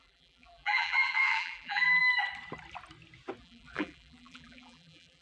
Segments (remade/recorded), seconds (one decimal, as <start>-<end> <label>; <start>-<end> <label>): 0.0-2.0 remade; 2.0-3.4 recorded; 3.4-5.2 remade